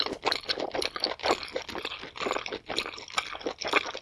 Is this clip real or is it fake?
real